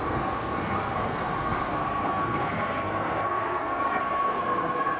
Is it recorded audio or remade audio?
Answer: remade